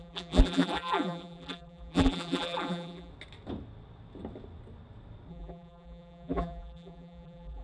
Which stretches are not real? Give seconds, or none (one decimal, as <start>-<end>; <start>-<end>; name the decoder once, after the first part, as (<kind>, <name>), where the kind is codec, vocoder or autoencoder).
0.0-3.1 (vocoder, BigVGAN v2); 5.3-7.6